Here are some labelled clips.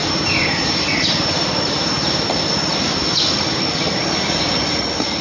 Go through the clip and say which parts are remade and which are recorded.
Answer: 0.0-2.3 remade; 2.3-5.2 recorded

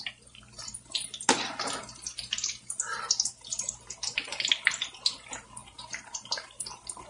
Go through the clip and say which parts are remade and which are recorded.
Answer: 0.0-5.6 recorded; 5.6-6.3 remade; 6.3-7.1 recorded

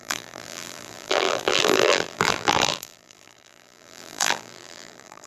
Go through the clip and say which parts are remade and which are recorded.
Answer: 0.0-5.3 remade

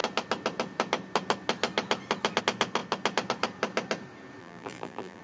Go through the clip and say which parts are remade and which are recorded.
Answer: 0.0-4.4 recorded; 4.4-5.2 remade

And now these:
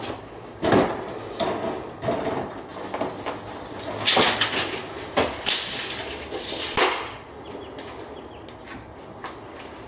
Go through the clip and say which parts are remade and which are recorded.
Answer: 0.0-2.7 recorded; 2.7-3.3 remade; 3.3-9.9 recorded

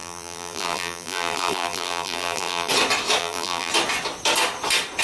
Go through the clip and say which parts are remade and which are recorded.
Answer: 0.0-2.7 remade; 2.7-3.2 recorded; 3.2-3.7 remade; 3.7-5.0 recorded